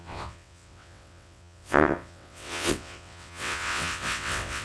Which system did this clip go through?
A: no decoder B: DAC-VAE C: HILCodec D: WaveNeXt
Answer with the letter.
D